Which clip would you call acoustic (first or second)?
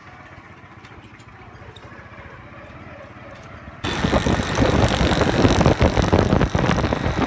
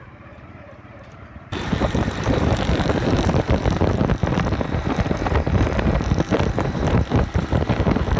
first